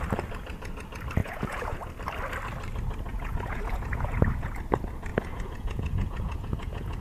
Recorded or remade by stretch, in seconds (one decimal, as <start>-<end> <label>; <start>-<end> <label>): 0.0-1.2 recorded; 1.2-1.9 remade; 1.9-3.1 recorded; 3.1-4.6 remade; 4.6-5.1 recorded; 5.1-7.0 remade